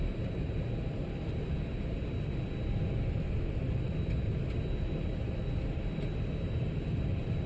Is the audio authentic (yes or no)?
yes